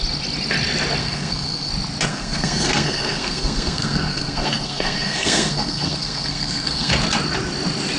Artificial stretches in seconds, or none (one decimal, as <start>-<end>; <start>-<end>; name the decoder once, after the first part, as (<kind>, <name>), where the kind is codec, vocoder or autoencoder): 1.0-1.7 (codec, SNAC); 2.1-6.9